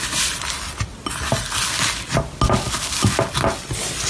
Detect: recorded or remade recorded